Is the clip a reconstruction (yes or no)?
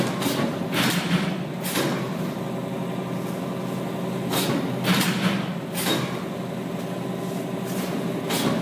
no